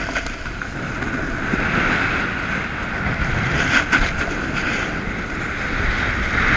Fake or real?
real